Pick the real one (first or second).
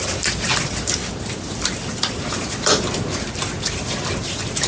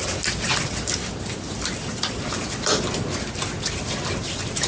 second